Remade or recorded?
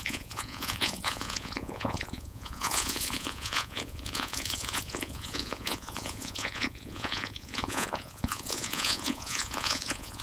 remade